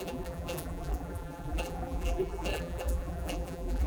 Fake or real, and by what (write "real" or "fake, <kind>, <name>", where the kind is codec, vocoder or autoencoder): fake, vocoder, BigVGAN v2